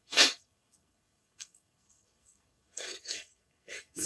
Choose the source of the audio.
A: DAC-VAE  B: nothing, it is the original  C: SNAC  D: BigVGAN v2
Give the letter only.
C